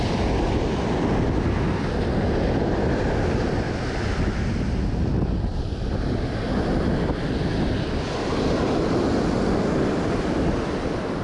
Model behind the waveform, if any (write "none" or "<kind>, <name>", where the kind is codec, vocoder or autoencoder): none